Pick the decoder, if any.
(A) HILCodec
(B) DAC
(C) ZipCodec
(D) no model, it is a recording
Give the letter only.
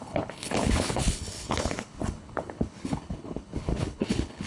A